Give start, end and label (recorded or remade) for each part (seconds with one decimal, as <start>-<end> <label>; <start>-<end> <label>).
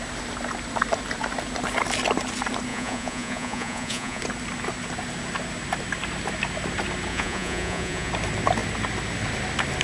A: 0.0-2.7 recorded; 2.7-4.2 remade; 4.2-7.1 recorded; 7.1-8.1 remade; 8.1-9.8 recorded